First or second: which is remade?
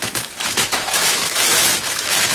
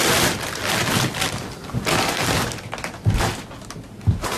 first